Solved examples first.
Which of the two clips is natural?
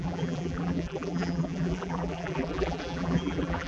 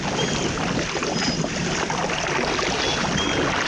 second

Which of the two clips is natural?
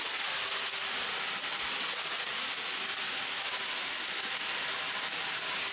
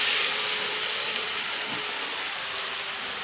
first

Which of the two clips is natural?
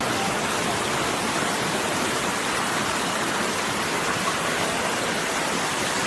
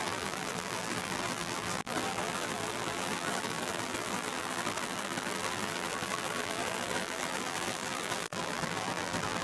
first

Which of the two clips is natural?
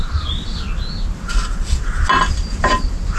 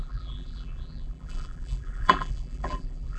first